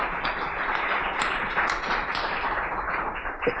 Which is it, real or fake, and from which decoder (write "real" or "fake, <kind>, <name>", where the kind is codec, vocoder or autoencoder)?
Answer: real